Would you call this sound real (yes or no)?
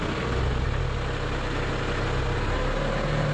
yes